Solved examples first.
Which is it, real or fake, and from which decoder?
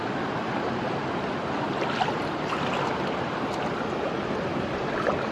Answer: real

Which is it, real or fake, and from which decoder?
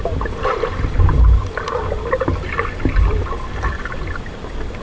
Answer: real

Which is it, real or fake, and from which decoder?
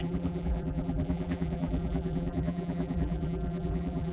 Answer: fake, vocoder, BigVGAN v2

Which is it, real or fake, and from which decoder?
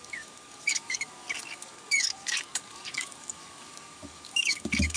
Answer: fake, codec, DAC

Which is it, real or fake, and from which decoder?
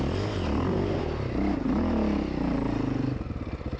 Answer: real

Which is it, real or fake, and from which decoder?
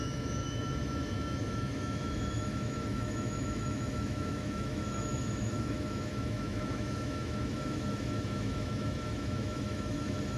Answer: fake, autoencoder, DAC-VAE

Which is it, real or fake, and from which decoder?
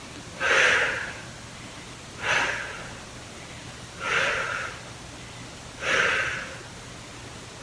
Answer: real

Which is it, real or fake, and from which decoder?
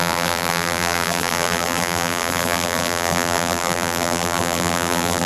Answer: fake, vocoder, BigVGAN v2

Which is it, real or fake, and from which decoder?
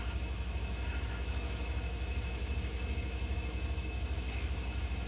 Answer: fake, autoencoder, DAC-VAE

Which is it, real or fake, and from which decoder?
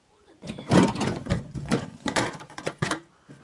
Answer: fake, vocoder, Vocos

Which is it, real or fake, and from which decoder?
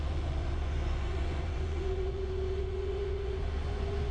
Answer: fake, vocoder, Vocos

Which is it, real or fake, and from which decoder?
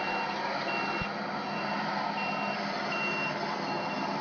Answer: real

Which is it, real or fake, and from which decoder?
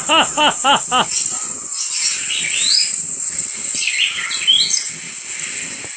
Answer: real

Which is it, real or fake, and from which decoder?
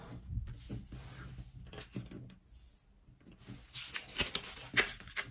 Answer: real